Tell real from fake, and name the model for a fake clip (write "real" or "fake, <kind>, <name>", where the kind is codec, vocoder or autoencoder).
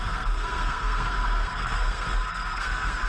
fake, codec, SNAC